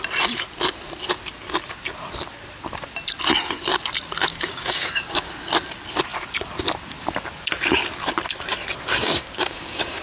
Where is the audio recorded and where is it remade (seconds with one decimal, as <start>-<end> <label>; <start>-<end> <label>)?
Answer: 0.0-4.3 recorded; 4.3-5.3 remade; 5.3-8.9 recorded; 8.9-10.0 remade